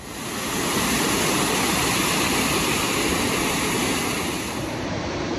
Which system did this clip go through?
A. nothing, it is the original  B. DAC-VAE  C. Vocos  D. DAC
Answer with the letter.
A